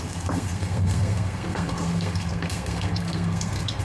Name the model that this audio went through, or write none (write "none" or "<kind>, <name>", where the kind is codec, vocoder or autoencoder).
codec, SNAC